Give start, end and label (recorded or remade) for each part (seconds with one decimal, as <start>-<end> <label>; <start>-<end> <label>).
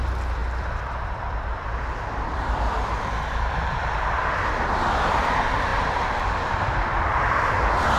0.0-0.4 recorded; 0.4-1.7 remade; 1.7-2.3 recorded; 2.3-4.3 remade; 4.3-5.7 recorded; 5.7-8.0 remade